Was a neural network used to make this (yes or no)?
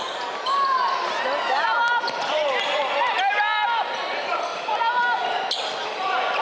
no